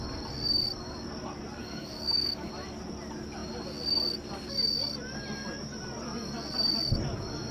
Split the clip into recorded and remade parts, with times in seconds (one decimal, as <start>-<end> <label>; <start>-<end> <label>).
0.0-1.6 recorded; 1.6-2.5 remade; 2.5-7.5 recorded